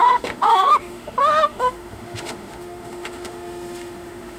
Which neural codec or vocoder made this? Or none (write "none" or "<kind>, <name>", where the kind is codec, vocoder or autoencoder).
autoencoder, DAC-VAE